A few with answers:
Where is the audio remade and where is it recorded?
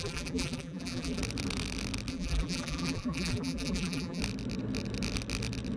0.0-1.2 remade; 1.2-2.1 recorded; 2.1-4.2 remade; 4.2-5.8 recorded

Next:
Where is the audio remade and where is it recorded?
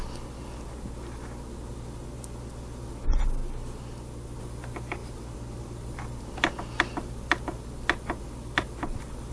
0.0-5.0 recorded; 5.0-6.6 remade; 6.6-9.3 recorded